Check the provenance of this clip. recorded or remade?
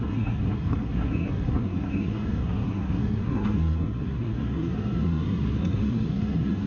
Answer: remade